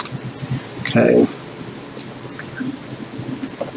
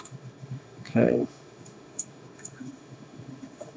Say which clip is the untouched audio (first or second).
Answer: first